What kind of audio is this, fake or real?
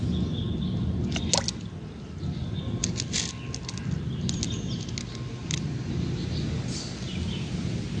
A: real